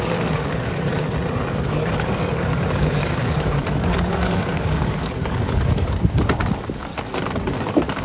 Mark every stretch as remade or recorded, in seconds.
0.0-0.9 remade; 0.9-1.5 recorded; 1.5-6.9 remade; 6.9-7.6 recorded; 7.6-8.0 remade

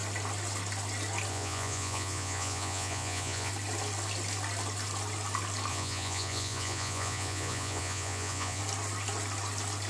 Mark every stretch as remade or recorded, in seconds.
0.0-1.3 recorded; 1.3-3.5 remade; 3.5-5.7 recorded; 5.7-8.6 remade; 8.6-9.9 recorded

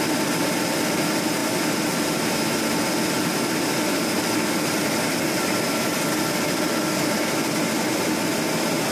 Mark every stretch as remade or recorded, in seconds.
0.0-8.9 recorded

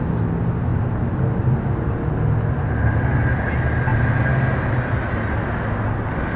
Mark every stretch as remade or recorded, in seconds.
0.0-6.4 recorded

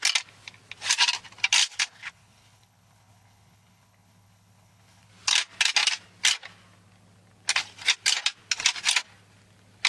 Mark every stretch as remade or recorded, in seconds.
0.0-1.6 recorded; 1.6-5.1 remade; 5.1-9.9 recorded

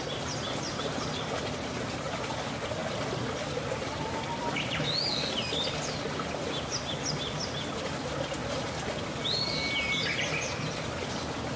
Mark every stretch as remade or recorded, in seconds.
0.0-11.6 recorded

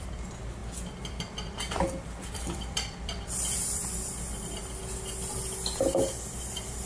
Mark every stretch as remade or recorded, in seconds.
0.0-3.8 remade; 3.8-6.4 recorded; 6.4-6.9 remade

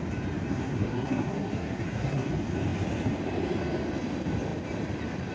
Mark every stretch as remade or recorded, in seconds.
0.0-0.5 recorded; 0.5-2.3 remade; 2.3-5.3 recorded